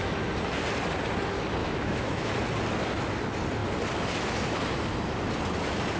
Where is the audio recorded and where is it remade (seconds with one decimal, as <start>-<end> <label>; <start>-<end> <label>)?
0.0-1.6 recorded; 1.6-2.3 remade; 2.3-6.0 recorded